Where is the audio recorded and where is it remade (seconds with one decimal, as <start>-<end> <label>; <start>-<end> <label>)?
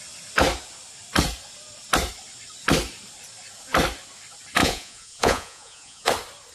0.0-4.6 recorded; 4.6-6.1 remade; 6.1-6.5 recorded